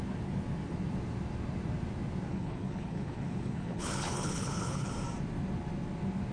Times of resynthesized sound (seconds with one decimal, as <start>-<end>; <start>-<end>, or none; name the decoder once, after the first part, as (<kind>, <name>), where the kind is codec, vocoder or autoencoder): 2.3-4.9 (codec, HILCodec)

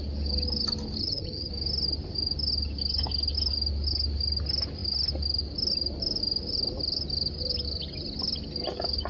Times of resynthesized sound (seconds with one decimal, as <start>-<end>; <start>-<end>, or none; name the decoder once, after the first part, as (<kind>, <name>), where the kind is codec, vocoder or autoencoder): 1.0-1.5 (vocoder, HiFi-GAN)